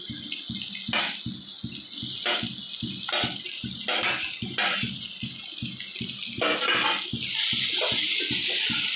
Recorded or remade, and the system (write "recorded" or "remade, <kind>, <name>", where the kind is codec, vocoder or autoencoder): recorded